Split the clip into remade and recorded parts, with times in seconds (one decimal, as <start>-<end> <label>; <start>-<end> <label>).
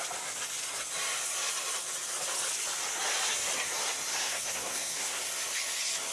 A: 0.0-4.1 recorded; 4.1-5.2 remade; 5.2-6.1 recorded